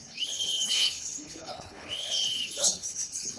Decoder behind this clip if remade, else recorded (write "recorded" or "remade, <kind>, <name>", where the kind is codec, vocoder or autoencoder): remade, codec, HILCodec